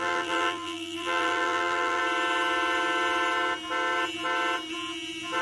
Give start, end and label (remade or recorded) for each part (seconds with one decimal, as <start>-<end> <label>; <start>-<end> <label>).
0.0-2.0 remade; 2.0-5.4 recorded